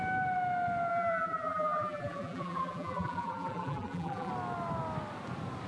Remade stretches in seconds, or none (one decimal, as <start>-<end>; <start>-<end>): 0.9-4.3